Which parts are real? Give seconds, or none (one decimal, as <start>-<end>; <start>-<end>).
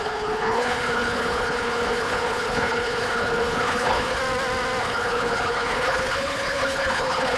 4.2-4.8